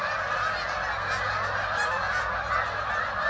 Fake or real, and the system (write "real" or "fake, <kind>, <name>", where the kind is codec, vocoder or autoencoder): real